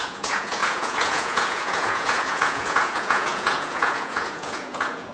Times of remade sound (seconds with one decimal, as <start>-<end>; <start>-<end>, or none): 0.0-5.1